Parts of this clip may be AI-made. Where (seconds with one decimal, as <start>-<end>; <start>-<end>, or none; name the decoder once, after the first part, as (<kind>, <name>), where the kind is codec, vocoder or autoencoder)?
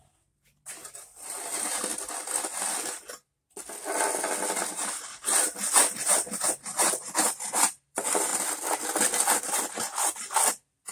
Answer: 0.0-1.9 (vocoder, BigVGAN v2); 4.7-8.3; 9.4-10.9